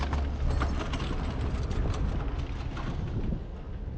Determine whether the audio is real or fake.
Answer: real